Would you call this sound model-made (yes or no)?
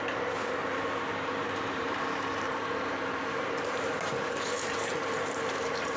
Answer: yes